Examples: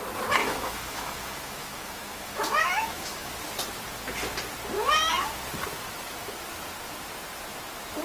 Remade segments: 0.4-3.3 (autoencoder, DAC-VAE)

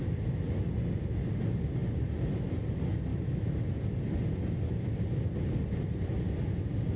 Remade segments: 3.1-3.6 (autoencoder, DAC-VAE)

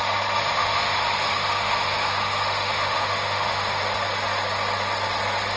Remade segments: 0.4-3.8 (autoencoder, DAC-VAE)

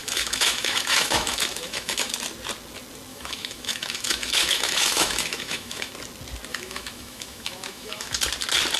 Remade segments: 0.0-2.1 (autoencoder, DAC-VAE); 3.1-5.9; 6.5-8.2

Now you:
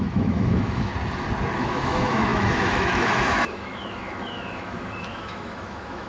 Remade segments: 0.0-0.9 (autoencoder, DAC-VAE); 1.5-6.1

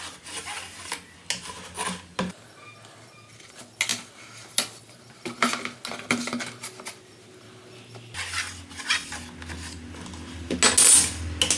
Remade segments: none

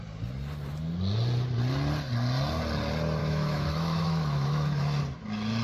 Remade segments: 3.2-5.0 (autoencoder, DAC-VAE)